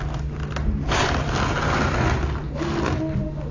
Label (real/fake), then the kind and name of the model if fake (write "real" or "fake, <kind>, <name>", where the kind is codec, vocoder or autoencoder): real